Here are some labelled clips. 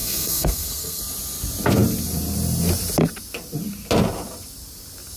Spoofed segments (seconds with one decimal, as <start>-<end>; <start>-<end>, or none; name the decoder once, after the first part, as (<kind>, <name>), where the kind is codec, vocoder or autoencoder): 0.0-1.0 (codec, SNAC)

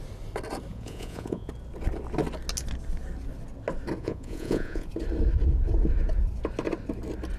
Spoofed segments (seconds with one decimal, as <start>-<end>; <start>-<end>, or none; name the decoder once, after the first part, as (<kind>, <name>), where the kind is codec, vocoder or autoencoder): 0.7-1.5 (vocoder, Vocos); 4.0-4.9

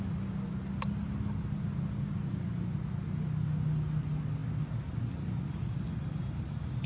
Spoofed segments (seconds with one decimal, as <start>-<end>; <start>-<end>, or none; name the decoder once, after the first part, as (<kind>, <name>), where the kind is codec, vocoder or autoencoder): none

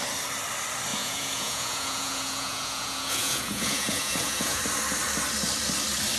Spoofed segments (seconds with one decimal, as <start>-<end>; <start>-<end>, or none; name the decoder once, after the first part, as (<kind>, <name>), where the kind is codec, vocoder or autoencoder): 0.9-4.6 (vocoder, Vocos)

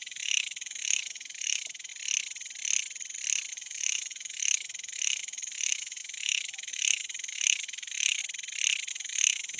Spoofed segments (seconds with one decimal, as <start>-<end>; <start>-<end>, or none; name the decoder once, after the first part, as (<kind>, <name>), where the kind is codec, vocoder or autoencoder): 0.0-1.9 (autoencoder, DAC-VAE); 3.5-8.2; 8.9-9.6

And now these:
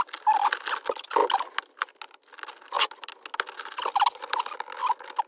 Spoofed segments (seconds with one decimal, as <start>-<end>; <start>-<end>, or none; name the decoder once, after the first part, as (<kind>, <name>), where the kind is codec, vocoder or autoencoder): none

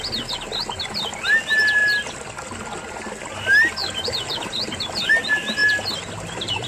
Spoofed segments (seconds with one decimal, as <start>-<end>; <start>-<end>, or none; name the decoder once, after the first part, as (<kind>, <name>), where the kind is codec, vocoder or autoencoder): 3.8-5.1 (vocoder, BigVGAN v2); 5.6-6.7

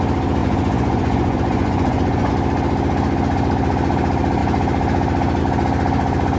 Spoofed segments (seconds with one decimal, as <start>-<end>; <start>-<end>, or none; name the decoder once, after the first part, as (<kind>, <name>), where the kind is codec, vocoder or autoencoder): 0.4-2.3 (vocoder, Vocos)